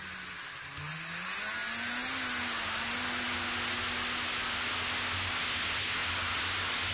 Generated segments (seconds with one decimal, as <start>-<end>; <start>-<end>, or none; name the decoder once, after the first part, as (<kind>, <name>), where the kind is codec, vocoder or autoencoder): none